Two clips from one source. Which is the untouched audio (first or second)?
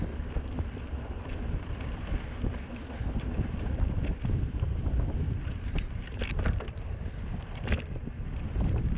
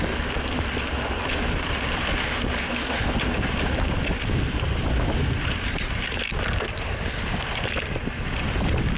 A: second